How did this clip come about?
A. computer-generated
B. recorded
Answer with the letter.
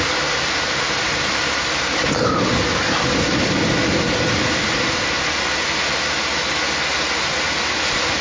B